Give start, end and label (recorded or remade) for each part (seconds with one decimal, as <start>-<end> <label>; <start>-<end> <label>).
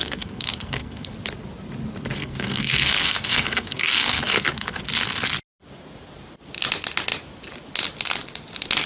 0.0-1.1 remade; 1.1-2.2 recorded; 2.2-4.8 remade; 4.8-8.9 recorded